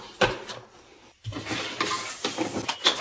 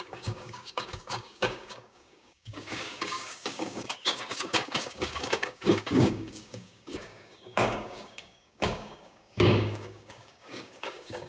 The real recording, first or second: first